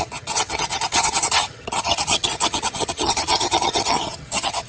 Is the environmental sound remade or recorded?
remade